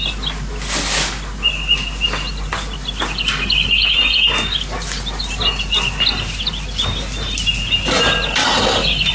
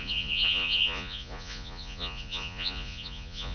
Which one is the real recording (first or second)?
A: first